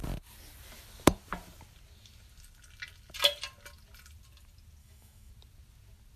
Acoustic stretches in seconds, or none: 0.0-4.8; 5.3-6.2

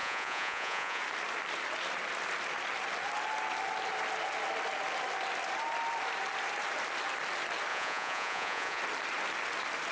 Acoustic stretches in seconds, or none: 1.0-7.7; 8.8-9.9

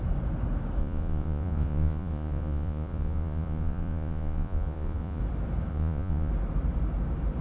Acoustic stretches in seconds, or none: 0.0-0.8; 5.2-5.7; 6.3-7.4

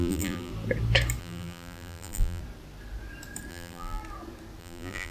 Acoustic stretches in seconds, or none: 0.5-1.2; 2.4-3.5; 4.0-4.6

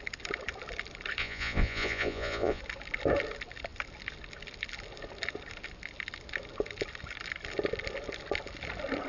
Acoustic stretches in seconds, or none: 0.0-1.2; 2.6-9.1

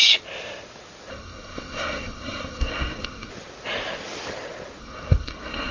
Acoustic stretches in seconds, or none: 0.0-1.1; 3.3-4.8